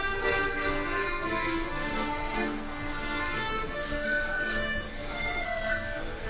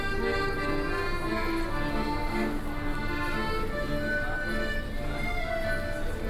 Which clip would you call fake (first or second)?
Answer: first